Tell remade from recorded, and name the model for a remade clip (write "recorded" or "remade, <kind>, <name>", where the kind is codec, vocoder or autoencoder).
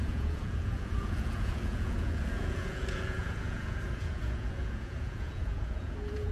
remade, vocoder, Vocos